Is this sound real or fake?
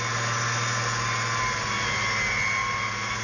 real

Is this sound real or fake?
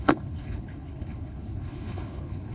fake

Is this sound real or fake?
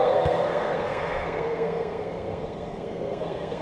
fake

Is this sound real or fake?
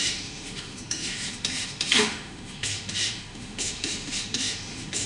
fake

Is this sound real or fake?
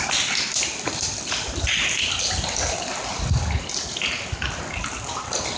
real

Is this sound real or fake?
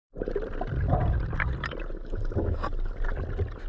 real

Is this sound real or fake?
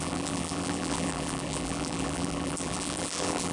fake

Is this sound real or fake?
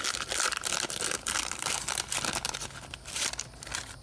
real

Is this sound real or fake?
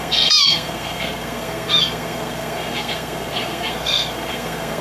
fake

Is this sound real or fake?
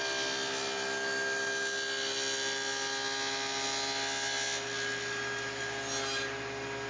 real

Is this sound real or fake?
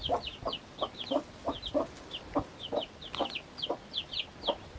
real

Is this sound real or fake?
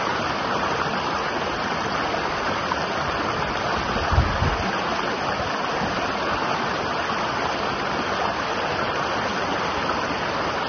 real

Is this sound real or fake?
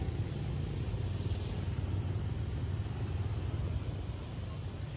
real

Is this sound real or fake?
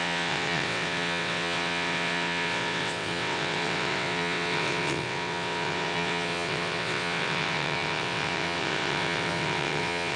fake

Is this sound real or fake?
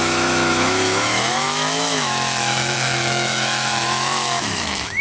fake